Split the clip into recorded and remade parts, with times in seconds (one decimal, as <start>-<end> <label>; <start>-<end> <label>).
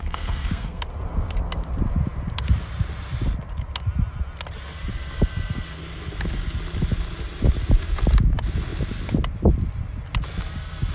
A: 0.0-0.8 remade; 0.8-10.9 recorded